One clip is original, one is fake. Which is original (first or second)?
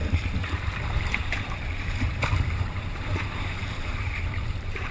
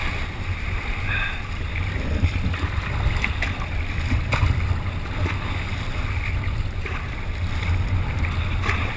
second